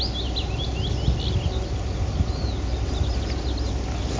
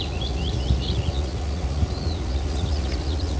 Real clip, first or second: first